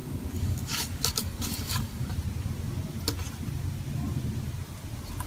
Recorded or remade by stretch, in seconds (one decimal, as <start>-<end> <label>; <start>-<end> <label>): 0.0-2.1 remade; 2.1-5.3 recorded